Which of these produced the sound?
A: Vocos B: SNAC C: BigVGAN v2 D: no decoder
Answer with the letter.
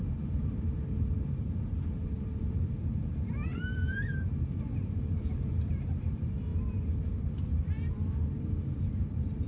C